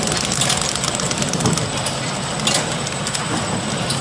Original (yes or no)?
yes